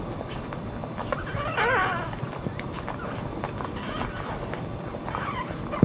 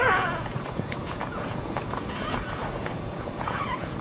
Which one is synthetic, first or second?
second